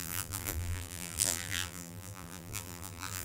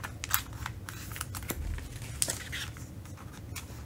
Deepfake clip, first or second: first